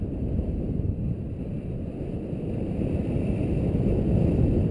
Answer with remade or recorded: remade